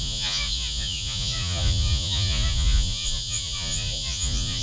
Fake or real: fake